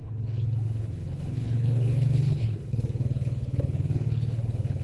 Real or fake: fake